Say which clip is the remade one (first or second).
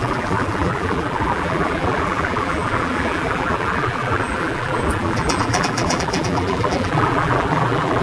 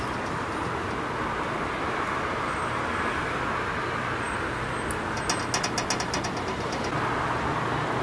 first